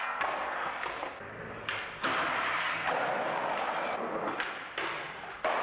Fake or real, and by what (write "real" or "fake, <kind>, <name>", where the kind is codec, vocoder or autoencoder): real